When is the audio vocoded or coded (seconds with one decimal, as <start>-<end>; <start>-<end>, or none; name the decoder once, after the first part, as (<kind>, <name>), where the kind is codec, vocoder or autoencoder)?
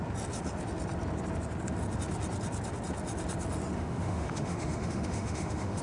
3.7-5.8 (autoencoder, DAC-VAE)